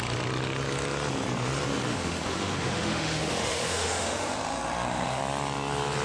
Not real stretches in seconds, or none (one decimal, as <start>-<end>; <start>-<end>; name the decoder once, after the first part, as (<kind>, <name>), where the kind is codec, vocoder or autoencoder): 1.9-5.2 (autoencoder, DAC-VAE)